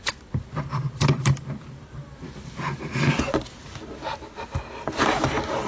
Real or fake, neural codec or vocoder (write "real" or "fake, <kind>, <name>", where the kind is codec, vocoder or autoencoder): real